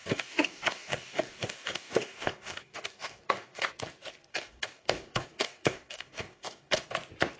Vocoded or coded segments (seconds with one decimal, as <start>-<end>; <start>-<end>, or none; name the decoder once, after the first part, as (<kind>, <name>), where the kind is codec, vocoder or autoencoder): 0.0-3.7 (codec, DAC); 4.3-6.8